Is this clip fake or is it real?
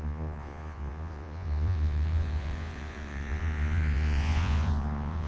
fake